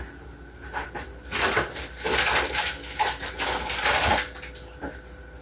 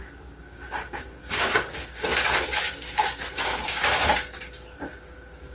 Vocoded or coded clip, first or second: second